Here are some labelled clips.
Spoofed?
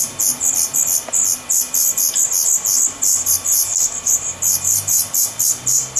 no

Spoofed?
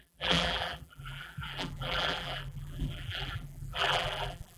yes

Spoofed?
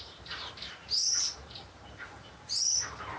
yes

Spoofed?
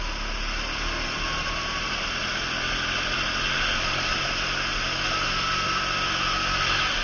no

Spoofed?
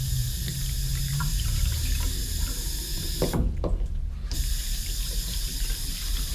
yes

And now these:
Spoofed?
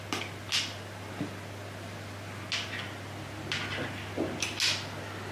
no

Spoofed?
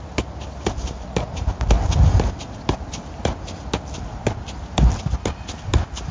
no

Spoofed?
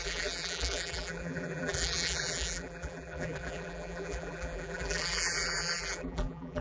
yes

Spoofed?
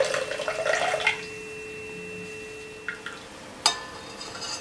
no